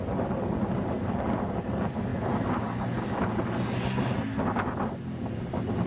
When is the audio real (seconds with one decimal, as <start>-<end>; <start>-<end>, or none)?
0.0-5.9